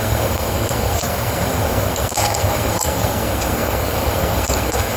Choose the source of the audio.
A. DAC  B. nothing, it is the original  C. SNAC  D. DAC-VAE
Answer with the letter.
C